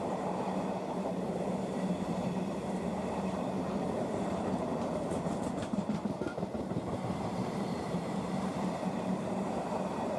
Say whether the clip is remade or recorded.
remade